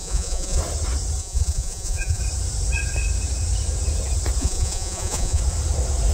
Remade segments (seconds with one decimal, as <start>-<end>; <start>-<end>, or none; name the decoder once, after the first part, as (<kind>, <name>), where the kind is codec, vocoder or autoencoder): 0.0-0.6 (vocoder, Vocos); 1.2-2.2; 4.4-5.4